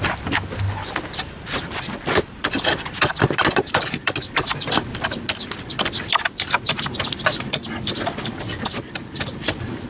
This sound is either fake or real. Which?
real